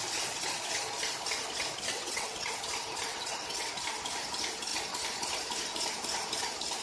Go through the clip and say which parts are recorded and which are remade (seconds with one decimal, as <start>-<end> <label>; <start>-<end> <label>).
0.0-1.9 recorded; 1.9-2.5 remade; 2.5-3.1 recorded; 3.1-3.7 remade; 3.7-6.8 recorded

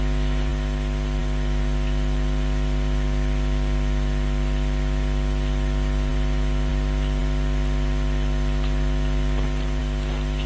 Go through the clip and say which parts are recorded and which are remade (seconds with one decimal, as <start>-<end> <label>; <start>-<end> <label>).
0.0-10.5 recorded

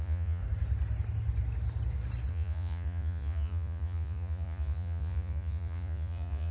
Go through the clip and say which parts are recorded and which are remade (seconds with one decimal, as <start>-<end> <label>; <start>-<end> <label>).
0.0-0.4 remade; 0.4-2.3 recorded; 2.3-6.5 remade

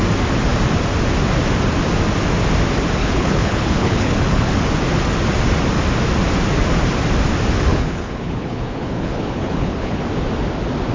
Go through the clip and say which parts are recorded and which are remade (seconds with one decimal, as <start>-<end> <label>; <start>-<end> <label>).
0.0-3.0 recorded; 3.0-4.5 remade; 4.5-7.7 recorded; 7.7-10.0 remade; 10.0-10.9 recorded

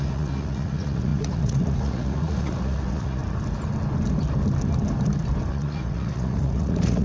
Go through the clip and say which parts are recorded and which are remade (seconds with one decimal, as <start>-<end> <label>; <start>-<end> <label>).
0.0-3.2 remade; 3.2-5.5 recorded; 5.5-7.0 remade

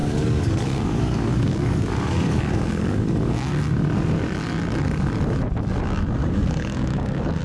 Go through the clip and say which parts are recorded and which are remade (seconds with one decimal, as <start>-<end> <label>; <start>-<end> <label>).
0.0-3.5 remade; 3.5-6.2 recorded; 6.2-7.4 remade

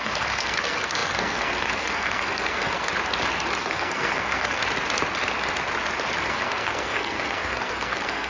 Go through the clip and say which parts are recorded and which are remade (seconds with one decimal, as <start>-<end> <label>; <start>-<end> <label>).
0.0-2.9 remade; 2.9-3.6 recorded; 3.6-4.6 remade; 4.6-6.3 recorded; 6.3-8.3 remade

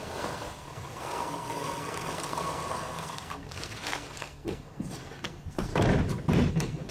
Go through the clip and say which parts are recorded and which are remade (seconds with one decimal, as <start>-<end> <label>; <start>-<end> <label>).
0.0-5.7 remade; 5.7-6.5 recorded; 6.5-6.9 remade